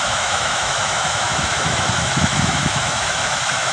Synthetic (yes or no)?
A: yes